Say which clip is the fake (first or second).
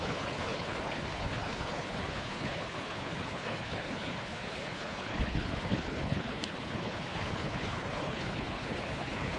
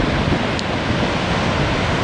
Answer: first